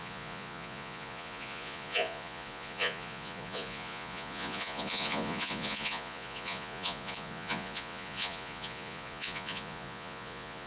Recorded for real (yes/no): no